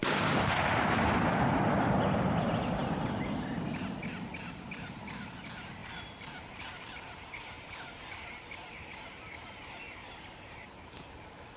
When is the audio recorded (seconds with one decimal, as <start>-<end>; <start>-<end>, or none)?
0.0-11.6